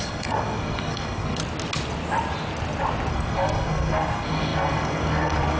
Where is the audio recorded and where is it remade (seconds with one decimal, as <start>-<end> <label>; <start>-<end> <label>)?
0.0-1.4 remade; 1.4-3.1 recorded; 3.1-5.6 remade